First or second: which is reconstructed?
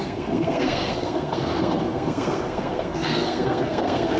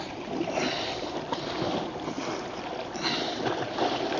first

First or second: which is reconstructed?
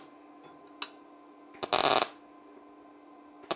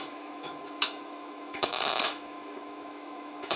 second